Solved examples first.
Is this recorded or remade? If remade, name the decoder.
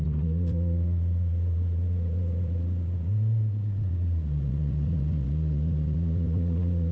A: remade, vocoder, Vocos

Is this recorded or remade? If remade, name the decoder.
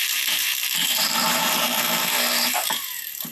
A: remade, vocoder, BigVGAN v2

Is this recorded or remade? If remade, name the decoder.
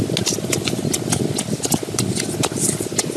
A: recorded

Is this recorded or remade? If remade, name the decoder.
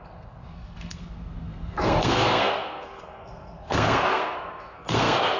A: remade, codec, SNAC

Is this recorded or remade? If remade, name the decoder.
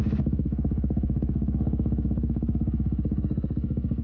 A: remade, codec, SNAC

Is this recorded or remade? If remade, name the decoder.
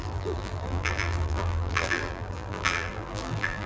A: remade, vocoder, BigVGAN v2